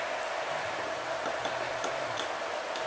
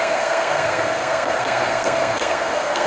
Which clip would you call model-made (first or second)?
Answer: second